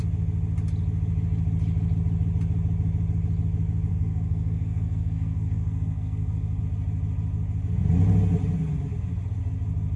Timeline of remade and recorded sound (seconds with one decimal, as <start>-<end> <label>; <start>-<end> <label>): 0.0-3.9 recorded; 3.9-6.6 remade; 6.6-10.0 recorded